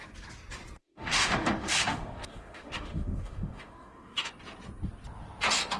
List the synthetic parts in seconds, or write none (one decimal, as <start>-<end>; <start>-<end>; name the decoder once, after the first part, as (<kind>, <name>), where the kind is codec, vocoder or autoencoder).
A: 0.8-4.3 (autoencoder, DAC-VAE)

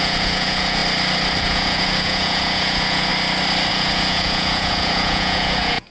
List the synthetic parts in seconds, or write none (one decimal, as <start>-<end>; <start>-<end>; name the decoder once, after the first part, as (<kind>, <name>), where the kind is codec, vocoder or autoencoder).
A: 0.0-0.8 (vocoder, Vocos); 1.4-3.1; 3.7-5.9

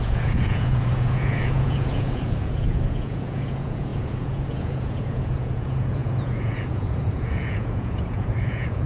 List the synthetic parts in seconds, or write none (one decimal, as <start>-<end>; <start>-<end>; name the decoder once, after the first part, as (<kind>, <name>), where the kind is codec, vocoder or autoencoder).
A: 0.0-8.9 (vocoder, Vocos)

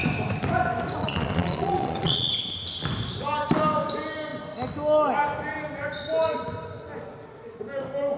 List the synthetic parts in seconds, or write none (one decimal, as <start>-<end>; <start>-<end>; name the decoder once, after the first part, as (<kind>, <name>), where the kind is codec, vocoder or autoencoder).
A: 1.0-2.3 (vocoder, Vocos)

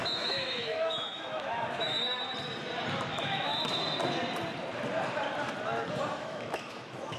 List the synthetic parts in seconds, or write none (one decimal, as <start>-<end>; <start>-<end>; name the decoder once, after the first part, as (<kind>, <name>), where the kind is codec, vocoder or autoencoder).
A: 0.0-2.0 (autoencoder, DAC-VAE); 3.1-3.5; 6.2-7.2

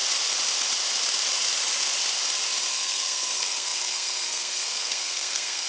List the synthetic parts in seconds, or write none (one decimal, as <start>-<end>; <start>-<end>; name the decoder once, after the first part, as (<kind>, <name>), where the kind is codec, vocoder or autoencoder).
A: 2.7-5.7 (codec, SNAC)